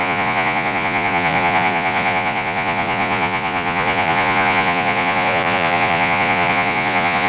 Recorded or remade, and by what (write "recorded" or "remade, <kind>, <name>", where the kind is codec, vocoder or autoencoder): remade, vocoder, Vocos